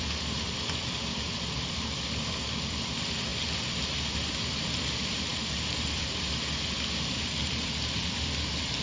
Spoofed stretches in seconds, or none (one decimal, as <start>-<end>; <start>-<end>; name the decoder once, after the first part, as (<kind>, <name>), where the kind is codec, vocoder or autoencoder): 0.0-3.3 (vocoder, BigVGAN v2); 3.8-5.3; 5.8-8.8